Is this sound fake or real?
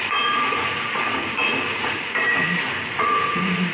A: fake